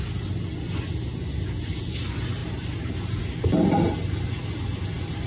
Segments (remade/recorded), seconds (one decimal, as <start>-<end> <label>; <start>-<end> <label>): 0.0-2.4 recorded; 2.4-3.2 remade; 3.2-5.3 recorded